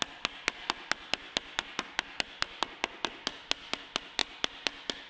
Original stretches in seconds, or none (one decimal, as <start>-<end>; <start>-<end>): 0.0-5.1